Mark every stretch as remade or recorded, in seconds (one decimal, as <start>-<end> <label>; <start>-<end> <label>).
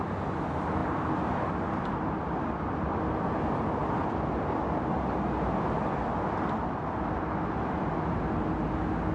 0.0-9.1 recorded